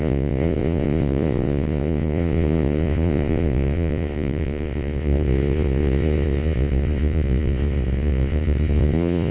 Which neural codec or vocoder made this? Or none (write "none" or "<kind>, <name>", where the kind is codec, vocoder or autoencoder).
vocoder, Vocos